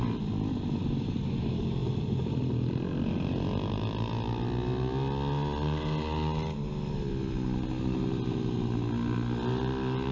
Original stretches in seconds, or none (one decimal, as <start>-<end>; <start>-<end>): 0.0-1.8; 2.8-10.1